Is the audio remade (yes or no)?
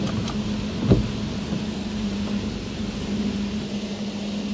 no